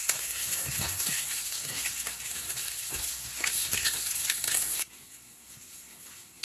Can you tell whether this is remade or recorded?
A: remade